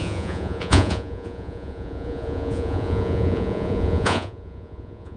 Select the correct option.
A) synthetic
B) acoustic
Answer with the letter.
A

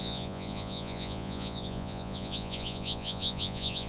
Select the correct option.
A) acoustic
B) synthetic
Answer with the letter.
B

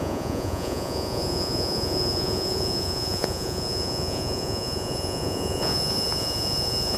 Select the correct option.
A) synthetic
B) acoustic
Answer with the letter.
A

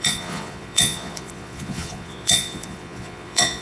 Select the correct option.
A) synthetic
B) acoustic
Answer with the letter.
A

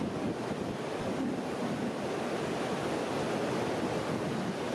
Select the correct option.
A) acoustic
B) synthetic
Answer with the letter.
A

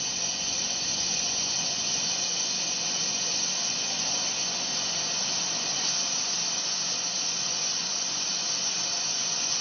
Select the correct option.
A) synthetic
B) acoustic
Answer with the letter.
A